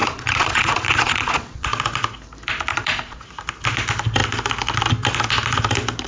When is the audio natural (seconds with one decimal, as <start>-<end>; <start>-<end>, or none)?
1.8-2.7; 3.3-6.1